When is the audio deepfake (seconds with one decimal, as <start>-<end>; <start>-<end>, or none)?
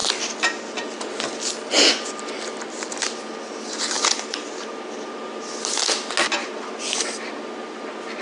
none